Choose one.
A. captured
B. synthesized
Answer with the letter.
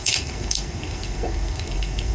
B